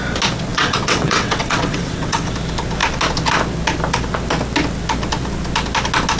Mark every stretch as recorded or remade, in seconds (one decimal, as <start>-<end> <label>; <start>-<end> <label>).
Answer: 0.0-0.5 recorded; 0.5-2.3 remade; 2.3-6.2 recorded